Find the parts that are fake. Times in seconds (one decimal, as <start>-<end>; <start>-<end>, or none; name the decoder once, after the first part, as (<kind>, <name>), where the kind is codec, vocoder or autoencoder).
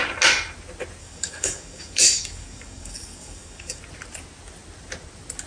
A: 1.0-3.8 (codec, DAC)